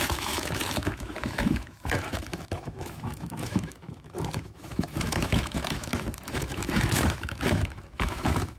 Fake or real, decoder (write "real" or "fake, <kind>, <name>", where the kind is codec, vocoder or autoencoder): fake, autoencoder, DAC-VAE